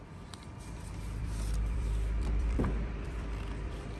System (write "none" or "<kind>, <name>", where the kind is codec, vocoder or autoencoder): vocoder, BigVGAN v2